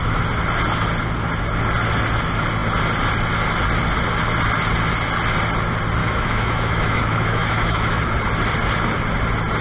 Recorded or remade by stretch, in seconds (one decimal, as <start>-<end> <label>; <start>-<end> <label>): 0.0-6.0 recorded; 6.0-8.0 remade; 8.0-9.6 recorded